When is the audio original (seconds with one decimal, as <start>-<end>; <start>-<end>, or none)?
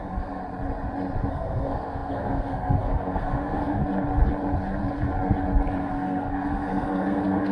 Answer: 0.4-1.3; 3.8-5.8